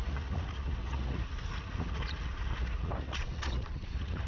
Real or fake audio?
fake